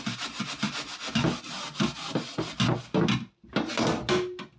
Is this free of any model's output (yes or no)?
yes